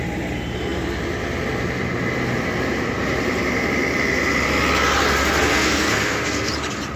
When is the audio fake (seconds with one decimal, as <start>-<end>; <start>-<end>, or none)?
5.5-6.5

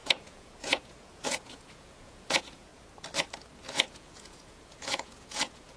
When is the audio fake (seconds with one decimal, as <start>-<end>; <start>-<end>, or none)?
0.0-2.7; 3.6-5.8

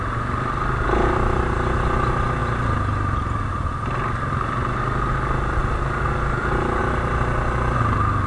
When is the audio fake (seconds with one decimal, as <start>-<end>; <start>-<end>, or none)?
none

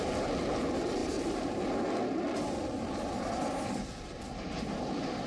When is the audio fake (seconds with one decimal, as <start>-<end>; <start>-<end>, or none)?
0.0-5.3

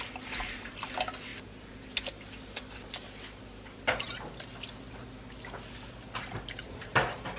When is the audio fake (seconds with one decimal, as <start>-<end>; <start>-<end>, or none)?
none